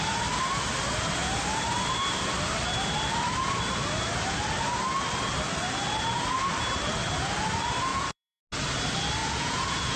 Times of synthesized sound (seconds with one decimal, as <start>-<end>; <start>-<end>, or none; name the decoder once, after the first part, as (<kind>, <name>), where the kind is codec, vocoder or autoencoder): 7.9-8.4 (vocoder, Vocos); 9.2-10.0